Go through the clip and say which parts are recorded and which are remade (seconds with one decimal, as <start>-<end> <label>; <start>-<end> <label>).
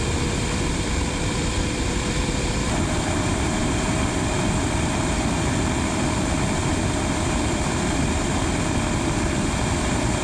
0.0-3.6 remade; 3.6-4.2 recorded; 4.2-10.2 remade